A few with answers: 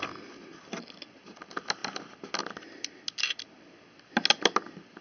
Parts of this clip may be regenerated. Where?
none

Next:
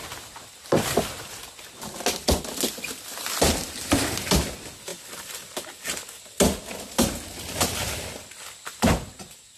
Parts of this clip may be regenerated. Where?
none

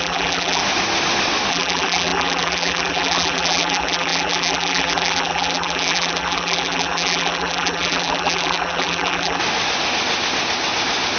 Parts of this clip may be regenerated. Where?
0.0-0.6 (vocoder, BigVGAN v2); 1.5-9.4

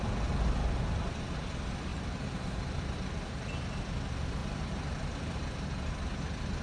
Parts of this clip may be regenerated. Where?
0.6-1.1 (vocoder, BigVGAN v2); 1.9-2.8; 4.4-5.4